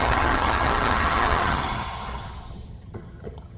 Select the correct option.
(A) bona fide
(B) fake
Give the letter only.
B